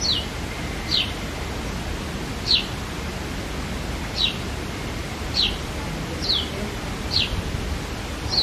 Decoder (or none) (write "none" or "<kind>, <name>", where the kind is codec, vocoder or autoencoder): none